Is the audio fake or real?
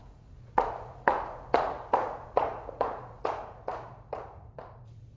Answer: fake